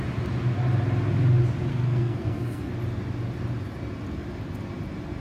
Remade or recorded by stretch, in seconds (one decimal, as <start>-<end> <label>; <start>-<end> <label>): 0.0-1.7 recorded; 1.7-2.7 remade; 2.7-5.2 recorded